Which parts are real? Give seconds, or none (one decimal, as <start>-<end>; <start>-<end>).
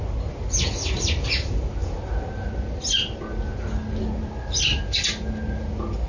0.0-6.1